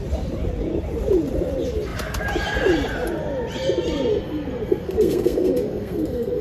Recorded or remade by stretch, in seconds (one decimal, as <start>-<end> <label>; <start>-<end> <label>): 0.0-4.1 recorded; 4.1-6.4 remade